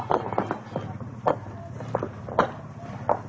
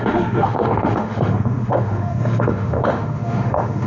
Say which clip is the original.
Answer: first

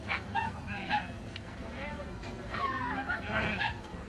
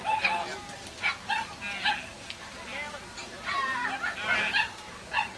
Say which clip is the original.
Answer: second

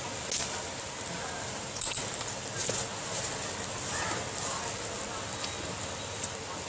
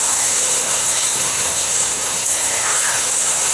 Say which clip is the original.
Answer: first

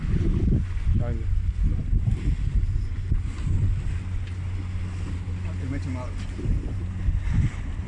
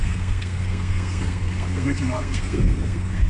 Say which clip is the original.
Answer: first